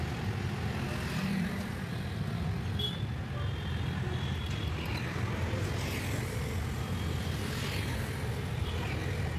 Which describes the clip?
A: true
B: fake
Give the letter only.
A